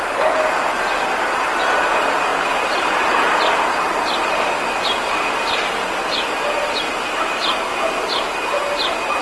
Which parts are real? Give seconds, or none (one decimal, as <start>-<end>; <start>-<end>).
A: 0.0-9.2